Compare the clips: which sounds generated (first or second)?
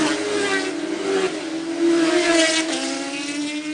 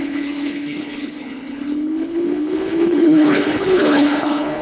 second